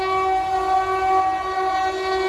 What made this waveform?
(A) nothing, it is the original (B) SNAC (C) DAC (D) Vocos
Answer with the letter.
A